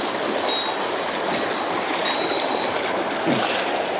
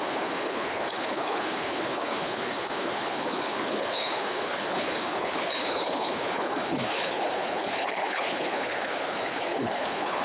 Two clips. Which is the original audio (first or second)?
first